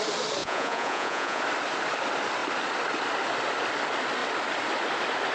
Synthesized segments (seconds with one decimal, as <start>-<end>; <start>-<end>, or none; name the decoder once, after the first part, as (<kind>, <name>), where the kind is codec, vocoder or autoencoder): 0.4-1.4 (vocoder, Vocos)